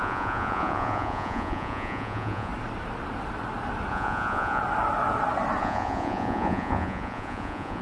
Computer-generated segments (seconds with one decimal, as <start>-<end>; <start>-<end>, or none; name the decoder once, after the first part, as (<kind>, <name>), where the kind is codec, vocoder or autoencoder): 0.0-2.5 (vocoder, Vocos); 3.9-4.6; 5.6-7.8